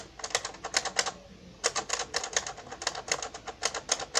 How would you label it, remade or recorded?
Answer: recorded